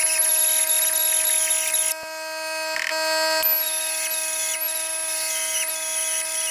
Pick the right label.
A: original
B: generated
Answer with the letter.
A